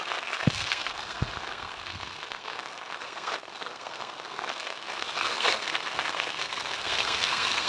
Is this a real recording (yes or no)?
no